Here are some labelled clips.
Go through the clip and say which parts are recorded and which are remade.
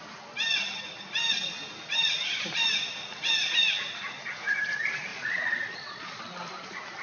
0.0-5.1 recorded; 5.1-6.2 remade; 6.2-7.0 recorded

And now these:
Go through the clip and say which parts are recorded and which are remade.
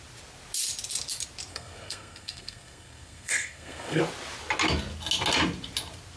0.0-1.5 recorded; 1.5-4.0 remade; 4.0-6.2 recorded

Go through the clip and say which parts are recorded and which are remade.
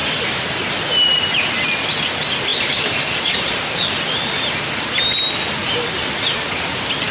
0.0-7.1 recorded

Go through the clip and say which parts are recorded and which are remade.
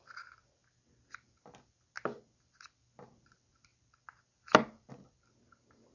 0.0-5.9 recorded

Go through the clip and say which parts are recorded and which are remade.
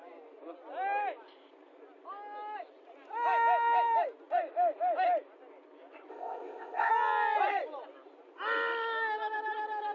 0.0-6.1 recorded; 6.1-6.9 remade; 6.9-9.9 recorded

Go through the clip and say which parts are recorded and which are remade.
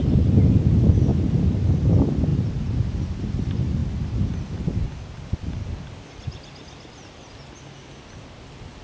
0.0-8.8 recorded